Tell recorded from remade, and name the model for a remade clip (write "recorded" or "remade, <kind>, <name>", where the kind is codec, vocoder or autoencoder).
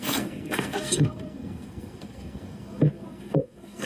remade, codec, SNAC